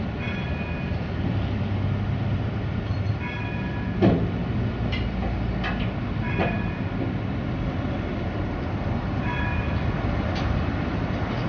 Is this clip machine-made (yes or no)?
no